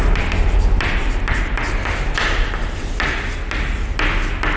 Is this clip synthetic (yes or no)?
no